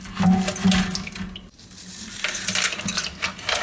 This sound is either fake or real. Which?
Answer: real